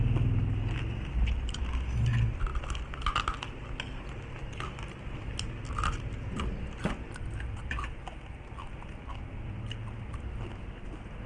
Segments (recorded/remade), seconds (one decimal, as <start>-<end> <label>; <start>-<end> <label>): 0.0-11.3 recorded